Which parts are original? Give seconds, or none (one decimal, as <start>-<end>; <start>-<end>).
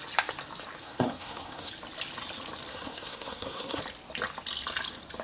0.0-0.8; 1.7-2.7; 3.8-5.2